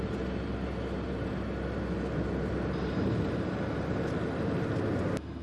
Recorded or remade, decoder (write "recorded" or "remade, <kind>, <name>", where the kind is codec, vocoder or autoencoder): recorded